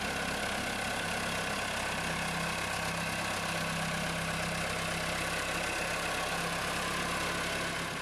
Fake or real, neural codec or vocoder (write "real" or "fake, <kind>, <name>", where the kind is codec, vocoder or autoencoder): real